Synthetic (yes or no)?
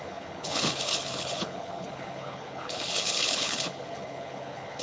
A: yes